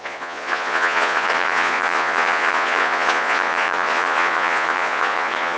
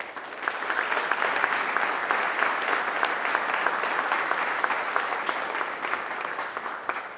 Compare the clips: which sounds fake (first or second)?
first